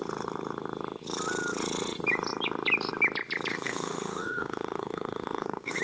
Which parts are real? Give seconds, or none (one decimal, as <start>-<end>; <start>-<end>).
0.0-3.5